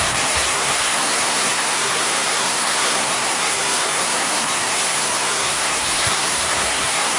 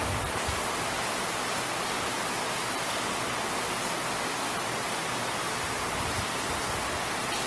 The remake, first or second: first